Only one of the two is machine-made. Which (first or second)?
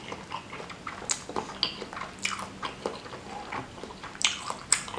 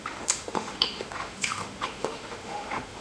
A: second